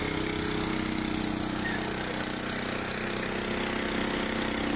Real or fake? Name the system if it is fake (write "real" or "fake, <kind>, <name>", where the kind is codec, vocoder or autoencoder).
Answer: real